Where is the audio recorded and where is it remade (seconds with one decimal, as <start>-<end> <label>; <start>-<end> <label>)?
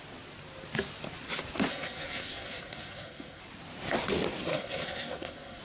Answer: 0.0-1.7 recorded; 1.7-3.4 remade; 3.4-4.5 recorded; 4.5-5.6 remade